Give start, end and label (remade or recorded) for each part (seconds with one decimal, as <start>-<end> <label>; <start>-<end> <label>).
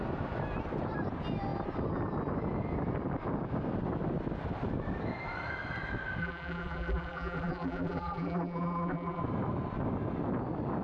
0.0-6.2 recorded; 6.2-9.2 remade; 9.2-10.8 recorded